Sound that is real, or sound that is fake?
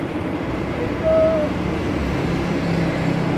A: real